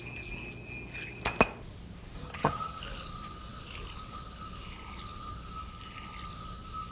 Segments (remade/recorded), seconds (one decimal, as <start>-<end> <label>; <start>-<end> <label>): 0.0-2.2 recorded; 2.2-2.8 remade; 2.8-6.9 recorded